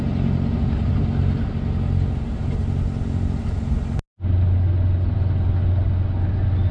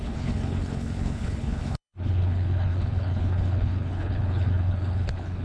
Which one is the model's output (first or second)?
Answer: second